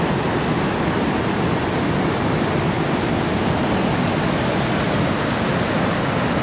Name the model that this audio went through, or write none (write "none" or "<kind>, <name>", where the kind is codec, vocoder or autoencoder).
none